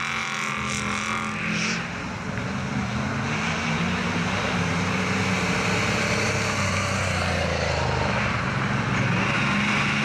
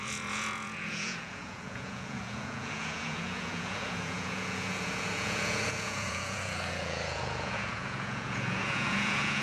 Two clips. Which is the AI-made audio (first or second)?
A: second